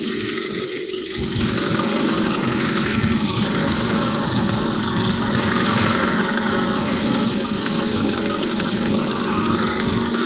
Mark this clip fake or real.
fake